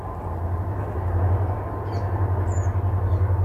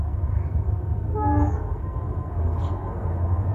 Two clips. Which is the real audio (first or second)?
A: first